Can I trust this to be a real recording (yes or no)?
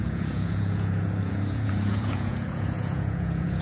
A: no